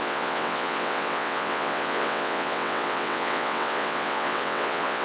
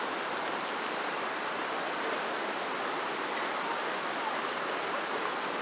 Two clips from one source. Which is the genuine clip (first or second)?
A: second